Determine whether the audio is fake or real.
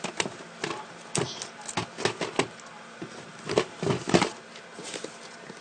real